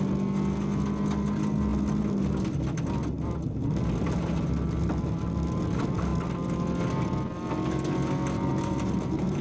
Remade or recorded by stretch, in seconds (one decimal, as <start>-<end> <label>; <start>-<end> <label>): 0.0-8.5 recorded; 8.5-9.4 remade